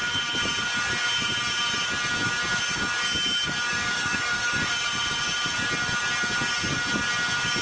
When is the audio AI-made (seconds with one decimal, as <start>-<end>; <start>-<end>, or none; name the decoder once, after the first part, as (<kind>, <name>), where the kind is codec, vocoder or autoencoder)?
3.7-4.7 (codec, DAC)